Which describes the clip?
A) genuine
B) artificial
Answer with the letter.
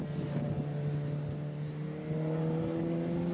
A